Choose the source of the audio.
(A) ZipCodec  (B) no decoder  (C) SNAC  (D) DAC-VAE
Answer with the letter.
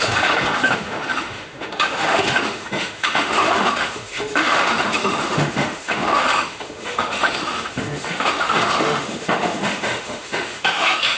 D